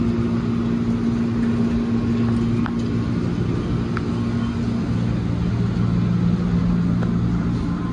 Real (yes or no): yes